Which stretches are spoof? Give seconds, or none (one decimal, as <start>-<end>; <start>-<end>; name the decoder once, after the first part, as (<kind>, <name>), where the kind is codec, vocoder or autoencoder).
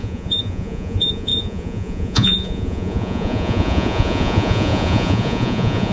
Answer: 0.0-5.9 (vocoder, Vocos)